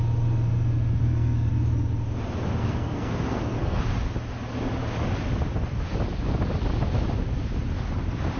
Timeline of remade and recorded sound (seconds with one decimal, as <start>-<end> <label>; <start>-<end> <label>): 0.0-1.0 recorded; 1.0-1.5 remade; 1.5-2.6 recorded; 2.6-3.8 remade; 3.8-8.4 recorded

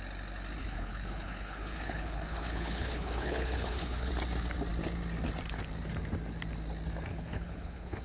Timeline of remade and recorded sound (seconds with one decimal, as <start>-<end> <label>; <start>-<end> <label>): 0.0-0.6 recorded; 0.6-4.1 remade; 4.1-7.1 recorded; 7.1-8.0 remade

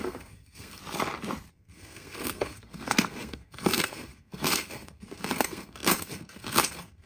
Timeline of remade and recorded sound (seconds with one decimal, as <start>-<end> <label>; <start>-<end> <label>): 0.0-0.8 remade; 0.8-1.5 recorded; 1.5-7.1 remade

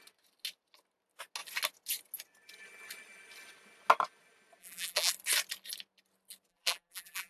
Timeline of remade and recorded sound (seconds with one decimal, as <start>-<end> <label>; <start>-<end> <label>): 0.0-4.6 recorded; 4.6-5.1 remade; 5.1-6.5 recorded; 6.5-7.3 remade

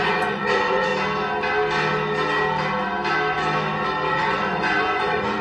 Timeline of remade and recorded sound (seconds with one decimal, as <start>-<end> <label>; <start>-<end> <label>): 0.0-0.9 remade; 0.9-4.1 recorded; 4.1-5.4 remade

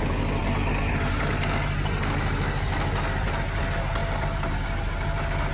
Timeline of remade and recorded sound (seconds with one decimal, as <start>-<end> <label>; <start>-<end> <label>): 0.0-5.5 recorded

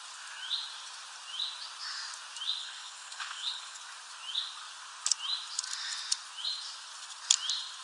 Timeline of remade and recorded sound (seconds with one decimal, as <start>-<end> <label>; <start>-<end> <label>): 0.0-2.6 recorded; 2.6-3.8 remade; 3.8-7.8 recorded

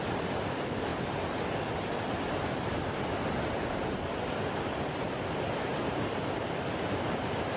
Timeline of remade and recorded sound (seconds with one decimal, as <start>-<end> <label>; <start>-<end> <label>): 0.0-7.6 recorded